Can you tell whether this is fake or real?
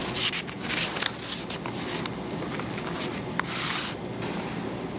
real